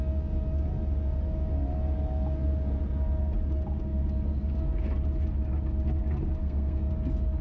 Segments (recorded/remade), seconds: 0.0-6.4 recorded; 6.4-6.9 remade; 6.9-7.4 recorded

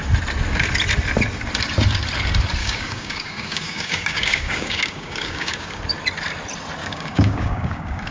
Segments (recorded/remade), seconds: 0.0-2.6 recorded; 2.6-5.8 remade; 5.8-6.8 recorded; 6.8-8.1 remade

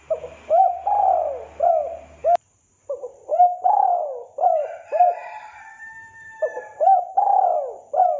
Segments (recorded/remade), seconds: 0.0-2.2 recorded; 2.2-7.0 remade; 7.0-8.2 recorded

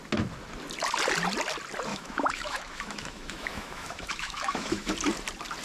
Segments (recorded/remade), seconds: 0.0-1.9 recorded; 1.9-4.9 remade; 4.9-5.6 recorded